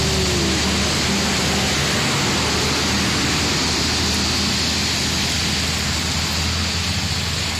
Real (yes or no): yes